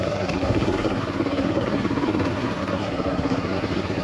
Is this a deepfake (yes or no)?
yes